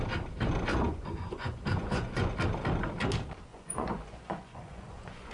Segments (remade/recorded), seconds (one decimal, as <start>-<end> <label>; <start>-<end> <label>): 0.0-0.7 recorded; 0.7-2.3 remade; 2.3-3.5 recorded; 3.5-5.3 remade